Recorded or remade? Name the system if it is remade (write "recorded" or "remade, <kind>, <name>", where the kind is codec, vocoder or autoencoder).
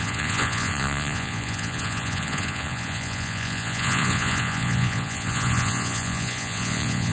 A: remade, vocoder, Vocos